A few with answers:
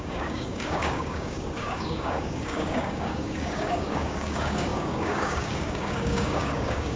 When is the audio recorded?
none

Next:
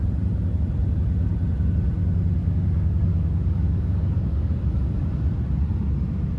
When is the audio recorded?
0.0-2.4; 5.1-6.4